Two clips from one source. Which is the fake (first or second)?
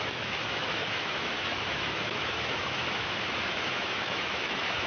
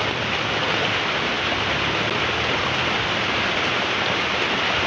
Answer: first